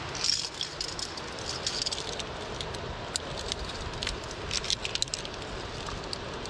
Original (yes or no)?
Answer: yes